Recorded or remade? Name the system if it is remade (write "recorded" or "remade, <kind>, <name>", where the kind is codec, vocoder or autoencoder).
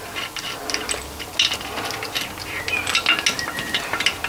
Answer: recorded